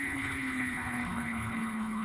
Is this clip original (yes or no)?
no